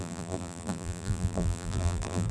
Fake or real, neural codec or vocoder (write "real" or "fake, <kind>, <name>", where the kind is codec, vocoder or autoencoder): fake, vocoder, BigVGAN v2